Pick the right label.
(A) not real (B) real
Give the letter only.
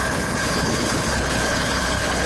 A